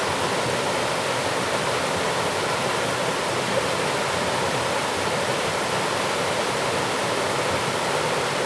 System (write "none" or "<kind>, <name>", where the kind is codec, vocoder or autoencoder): none